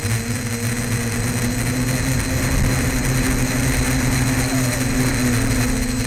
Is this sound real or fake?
real